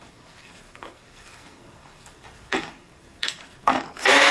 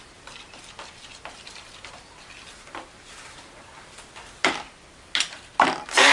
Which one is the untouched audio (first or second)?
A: second